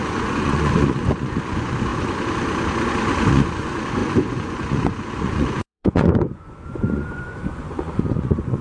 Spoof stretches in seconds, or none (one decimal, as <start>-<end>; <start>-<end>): 0.0-1.9; 3.3-8.6